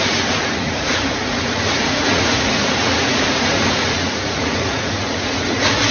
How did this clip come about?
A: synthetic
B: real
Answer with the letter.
A